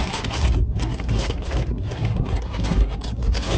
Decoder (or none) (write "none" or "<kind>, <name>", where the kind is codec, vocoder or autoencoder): codec, SNAC